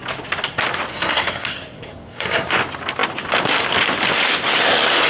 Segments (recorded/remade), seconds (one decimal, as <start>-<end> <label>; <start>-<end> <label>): 0.0-0.9 recorded; 0.9-2.5 remade; 2.5-5.1 recorded